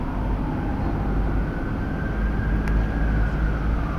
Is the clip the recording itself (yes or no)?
yes